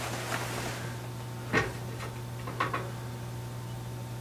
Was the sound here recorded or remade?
recorded